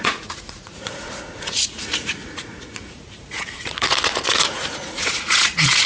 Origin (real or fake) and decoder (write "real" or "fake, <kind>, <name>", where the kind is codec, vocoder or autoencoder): fake, vocoder, Vocos